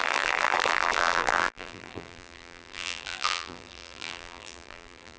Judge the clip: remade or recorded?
remade